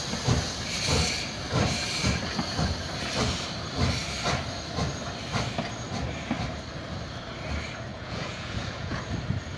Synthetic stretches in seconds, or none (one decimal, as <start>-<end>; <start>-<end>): 7.9-9.0